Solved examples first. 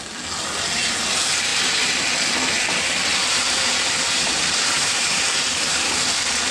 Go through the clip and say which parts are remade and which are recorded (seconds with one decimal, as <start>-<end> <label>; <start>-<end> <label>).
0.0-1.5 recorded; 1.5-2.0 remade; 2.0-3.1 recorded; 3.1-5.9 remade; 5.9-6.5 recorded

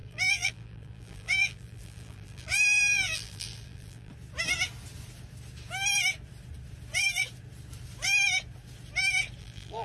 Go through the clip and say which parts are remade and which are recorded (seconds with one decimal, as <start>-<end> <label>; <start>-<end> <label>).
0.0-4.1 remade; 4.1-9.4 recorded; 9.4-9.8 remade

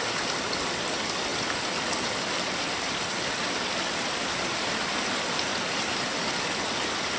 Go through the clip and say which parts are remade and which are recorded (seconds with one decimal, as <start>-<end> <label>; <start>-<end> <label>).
0.0-7.2 recorded

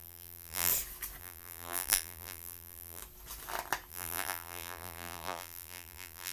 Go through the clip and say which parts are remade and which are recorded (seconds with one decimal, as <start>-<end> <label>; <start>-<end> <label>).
0.0-0.7 remade; 0.7-1.2 recorded; 1.2-3.0 remade; 3.0-3.9 recorded; 3.9-6.3 remade

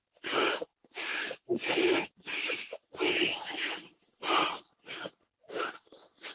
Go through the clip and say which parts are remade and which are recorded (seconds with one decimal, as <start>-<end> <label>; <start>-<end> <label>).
0.0-1.1 recorded; 1.1-3.4 remade; 3.4-6.3 recorded

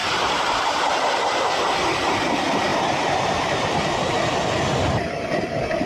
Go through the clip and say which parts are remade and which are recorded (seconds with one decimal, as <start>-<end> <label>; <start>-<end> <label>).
0.0-0.9 remade; 0.9-2.7 recorded; 2.7-4.1 remade; 4.1-5.9 recorded

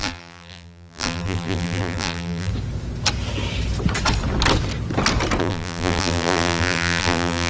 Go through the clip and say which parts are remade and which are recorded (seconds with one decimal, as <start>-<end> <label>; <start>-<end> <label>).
0.0-2.5 remade; 2.5-5.4 recorded; 5.4-7.5 remade